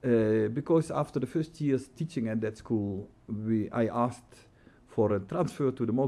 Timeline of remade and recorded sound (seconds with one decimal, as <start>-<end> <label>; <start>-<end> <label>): 0.0-0.6 recorded; 0.6-1.2 remade; 1.2-6.1 recorded